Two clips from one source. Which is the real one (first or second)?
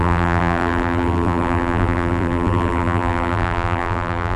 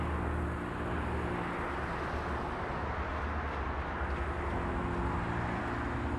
second